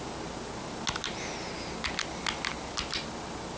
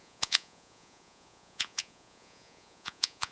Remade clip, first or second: second